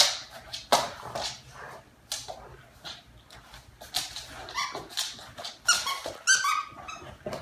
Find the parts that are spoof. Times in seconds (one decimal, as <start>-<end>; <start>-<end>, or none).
none